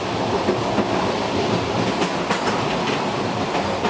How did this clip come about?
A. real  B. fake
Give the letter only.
A